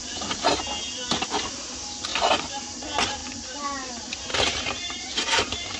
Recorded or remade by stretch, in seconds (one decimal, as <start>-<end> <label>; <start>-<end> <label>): 0.0-2.1 recorded; 2.1-2.6 remade; 2.6-3.2 recorded; 3.2-3.9 remade; 3.9-4.3 recorded; 4.3-5.8 remade